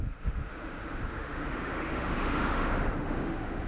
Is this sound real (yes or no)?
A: no